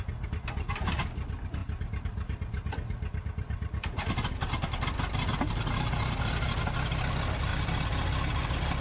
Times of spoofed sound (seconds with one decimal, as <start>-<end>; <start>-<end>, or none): none